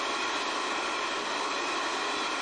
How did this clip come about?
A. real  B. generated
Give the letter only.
A